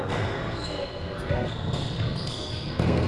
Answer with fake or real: fake